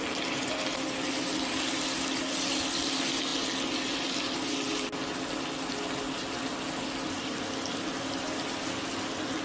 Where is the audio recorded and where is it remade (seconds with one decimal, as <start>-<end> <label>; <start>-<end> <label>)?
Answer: 0.0-9.4 recorded